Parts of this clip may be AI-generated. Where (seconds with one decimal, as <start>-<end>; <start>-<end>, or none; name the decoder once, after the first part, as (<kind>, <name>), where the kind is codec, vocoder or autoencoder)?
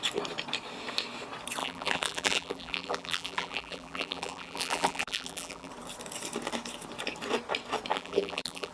1.6-5.7 (vocoder, BigVGAN v2); 7.9-8.7